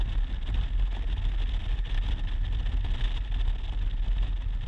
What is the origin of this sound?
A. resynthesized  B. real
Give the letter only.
B